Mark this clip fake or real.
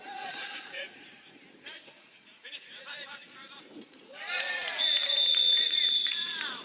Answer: fake